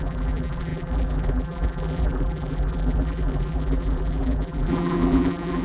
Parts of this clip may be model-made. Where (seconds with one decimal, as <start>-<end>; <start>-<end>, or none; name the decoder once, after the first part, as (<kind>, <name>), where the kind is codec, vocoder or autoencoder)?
0.0-5.6 (vocoder, BigVGAN v2)